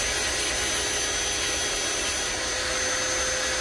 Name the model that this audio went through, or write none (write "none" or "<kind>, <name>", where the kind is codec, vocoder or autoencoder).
none